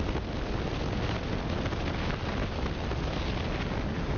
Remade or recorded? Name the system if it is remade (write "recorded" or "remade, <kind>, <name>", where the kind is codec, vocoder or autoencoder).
recorded